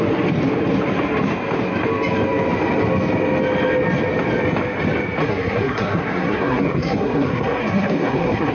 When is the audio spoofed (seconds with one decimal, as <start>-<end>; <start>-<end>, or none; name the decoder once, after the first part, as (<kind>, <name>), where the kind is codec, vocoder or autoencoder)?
5.2-8.5 (codec, SNAC)